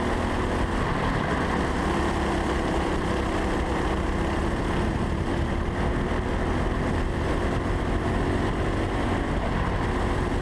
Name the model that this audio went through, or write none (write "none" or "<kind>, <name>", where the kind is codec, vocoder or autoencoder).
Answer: none